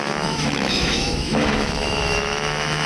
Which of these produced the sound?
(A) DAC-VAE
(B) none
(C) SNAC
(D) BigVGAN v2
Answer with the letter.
A